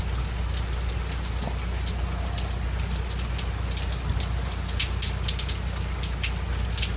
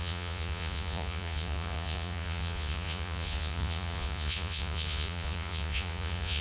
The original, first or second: first